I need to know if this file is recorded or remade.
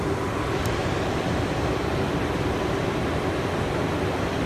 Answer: recorded